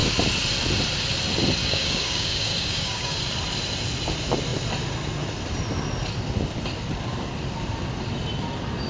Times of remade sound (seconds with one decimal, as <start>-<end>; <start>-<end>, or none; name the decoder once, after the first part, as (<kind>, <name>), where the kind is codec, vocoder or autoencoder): 1.6-3.2 (codec, DAC)